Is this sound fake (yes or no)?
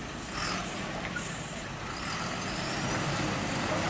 no